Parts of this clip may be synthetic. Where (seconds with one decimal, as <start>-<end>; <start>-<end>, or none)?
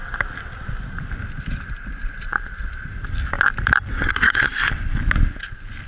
3.9-4.7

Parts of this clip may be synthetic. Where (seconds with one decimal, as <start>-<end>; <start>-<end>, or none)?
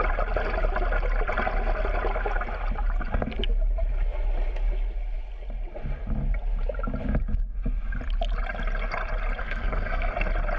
9.4-10.1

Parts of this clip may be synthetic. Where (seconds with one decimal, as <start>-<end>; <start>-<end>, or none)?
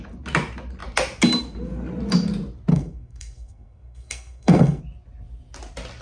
2.7-4.8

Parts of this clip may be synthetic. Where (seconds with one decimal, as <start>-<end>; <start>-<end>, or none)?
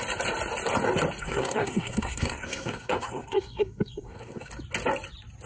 1.2-4.5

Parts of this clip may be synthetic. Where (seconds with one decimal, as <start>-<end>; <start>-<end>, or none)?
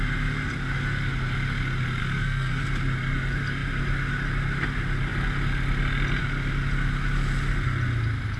2.0-2.6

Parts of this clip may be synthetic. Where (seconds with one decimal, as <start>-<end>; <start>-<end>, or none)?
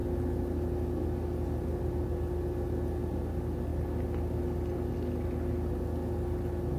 none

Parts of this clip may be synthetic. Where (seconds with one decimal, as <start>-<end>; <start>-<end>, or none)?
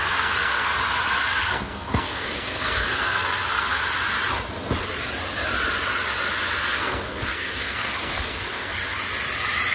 0.0-0.7; 1.4-3.8; 6.7-8.8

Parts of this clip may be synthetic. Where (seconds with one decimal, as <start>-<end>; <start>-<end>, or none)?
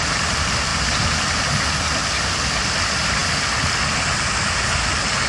none